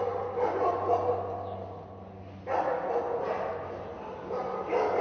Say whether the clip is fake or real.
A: real